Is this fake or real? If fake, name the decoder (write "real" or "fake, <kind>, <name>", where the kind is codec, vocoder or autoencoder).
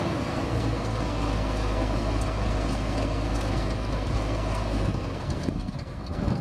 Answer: fake, codec, SNAC